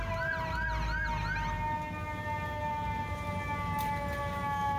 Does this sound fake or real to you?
real